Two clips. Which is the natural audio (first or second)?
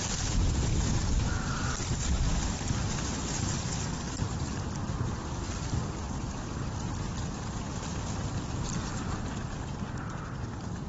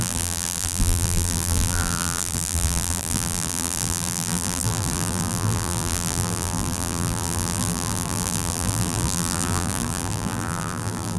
first